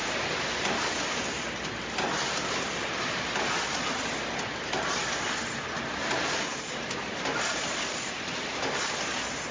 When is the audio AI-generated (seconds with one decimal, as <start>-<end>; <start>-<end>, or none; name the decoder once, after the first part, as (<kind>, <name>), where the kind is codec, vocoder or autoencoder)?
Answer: none